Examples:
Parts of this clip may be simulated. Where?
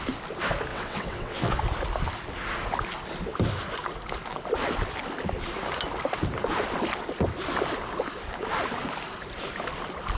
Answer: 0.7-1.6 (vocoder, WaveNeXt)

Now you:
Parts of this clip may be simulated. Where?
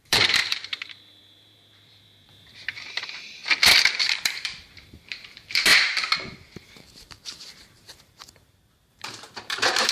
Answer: 0.0-3.4 (vocoder, BigVGAN v2); 4.0-5.7; 6.6-9.9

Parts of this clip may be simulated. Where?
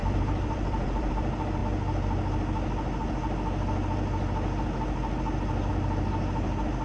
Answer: 0.0-1.1 (vocoder, BigVGAN v2)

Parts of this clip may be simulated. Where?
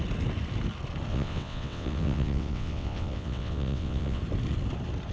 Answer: 1.1-4.2 (vocoder, WaveNeXt)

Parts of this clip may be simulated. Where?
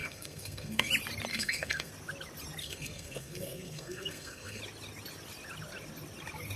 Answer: 0.0-0.9 (codec, SNAC); 1.3-1.9; 2.6-4.6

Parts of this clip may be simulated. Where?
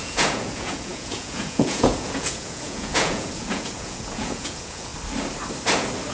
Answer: 0.0-4.9 (vocoder, Vocos)